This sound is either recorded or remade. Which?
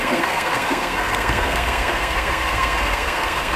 remade